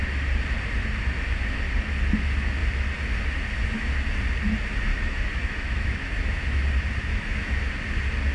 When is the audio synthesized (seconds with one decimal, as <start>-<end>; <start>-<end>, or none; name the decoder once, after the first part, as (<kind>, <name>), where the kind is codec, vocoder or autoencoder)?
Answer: 4.9-6.6 (autoencoder, DAC-VAE); 7.1-7.7